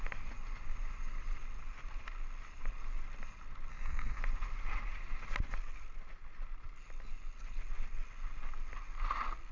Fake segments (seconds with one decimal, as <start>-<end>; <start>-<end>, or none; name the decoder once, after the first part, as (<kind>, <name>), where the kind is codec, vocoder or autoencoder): 3.7-4.2 (codec, SNAC)